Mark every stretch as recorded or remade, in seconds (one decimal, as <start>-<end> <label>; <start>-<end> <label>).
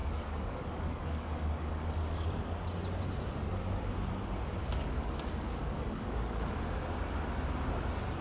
0.0-2.4 remade; 2.4-4.6 recorded; 4.6-6.6 remade; 6.6-8.2 recorded